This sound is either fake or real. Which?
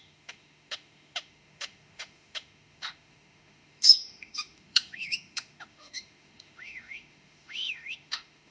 fake